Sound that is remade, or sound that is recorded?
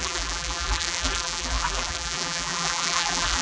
remade